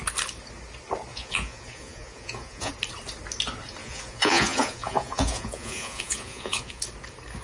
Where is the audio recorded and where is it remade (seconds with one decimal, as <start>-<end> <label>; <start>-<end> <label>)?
0.0-1.1 recorded; 1.1-2.7 remade; 2.7-3.8 recorded; 3.8-6.8 remade; 6.8-7.4 recorded